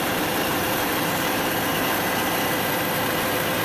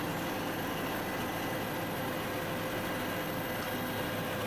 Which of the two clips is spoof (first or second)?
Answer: first